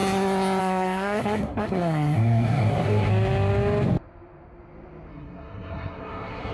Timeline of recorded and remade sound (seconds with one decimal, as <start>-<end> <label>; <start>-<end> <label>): 0.0-0.6 recorded; 0.6-3.1 remade; 3.1-5.1 recorded; 5.1-6.5 remade